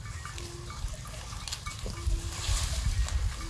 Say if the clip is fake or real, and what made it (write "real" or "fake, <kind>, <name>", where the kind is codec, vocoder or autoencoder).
real